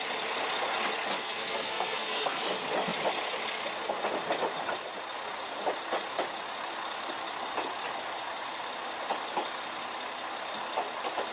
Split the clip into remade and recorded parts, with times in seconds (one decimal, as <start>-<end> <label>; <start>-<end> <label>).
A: 0.0-1.2 recorded; 1.2-2.4 remade; 2.4-11.3 recorded